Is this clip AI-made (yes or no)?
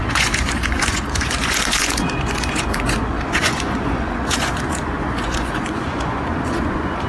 yes